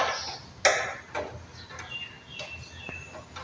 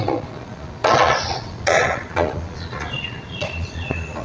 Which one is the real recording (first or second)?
first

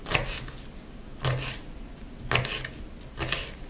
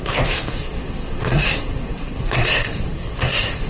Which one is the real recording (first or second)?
first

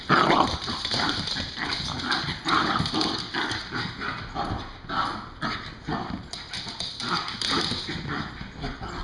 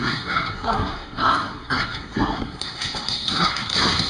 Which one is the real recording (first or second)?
first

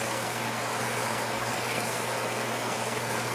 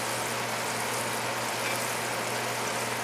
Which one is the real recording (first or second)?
second